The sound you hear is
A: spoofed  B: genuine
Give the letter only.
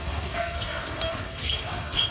A